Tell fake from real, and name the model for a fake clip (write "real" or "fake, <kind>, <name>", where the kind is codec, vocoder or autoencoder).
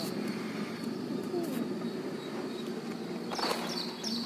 real